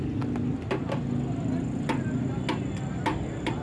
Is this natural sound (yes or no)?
yes